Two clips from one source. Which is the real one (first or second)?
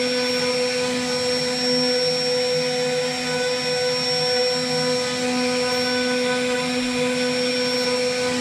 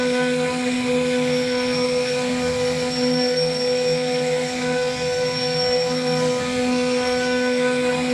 first